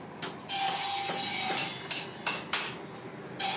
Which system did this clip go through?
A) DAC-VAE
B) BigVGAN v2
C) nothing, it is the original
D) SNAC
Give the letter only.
C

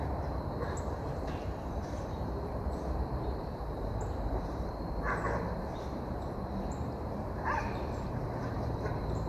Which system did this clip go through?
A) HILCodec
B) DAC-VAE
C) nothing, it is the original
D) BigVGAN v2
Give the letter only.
D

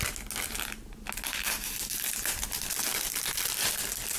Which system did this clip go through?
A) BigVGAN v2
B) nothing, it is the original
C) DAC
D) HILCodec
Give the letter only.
B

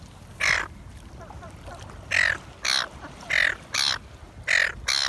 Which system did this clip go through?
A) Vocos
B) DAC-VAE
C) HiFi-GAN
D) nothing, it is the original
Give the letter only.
D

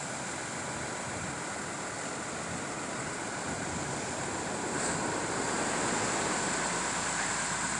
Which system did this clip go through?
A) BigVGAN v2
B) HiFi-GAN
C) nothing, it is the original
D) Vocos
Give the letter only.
A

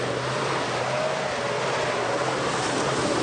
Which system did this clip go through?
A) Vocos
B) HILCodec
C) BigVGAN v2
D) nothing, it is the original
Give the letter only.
D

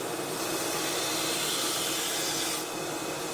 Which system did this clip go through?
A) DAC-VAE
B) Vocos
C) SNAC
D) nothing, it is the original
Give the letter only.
D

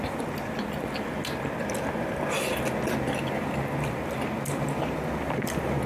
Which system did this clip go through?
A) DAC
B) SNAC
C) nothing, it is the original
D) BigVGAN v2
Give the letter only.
C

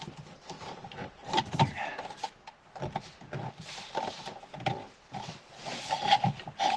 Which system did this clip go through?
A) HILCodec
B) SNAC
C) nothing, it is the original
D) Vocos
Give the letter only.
C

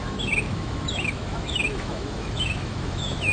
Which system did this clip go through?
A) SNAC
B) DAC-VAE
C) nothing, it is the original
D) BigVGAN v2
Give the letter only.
B